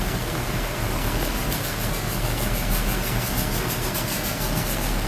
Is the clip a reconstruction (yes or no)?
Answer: yes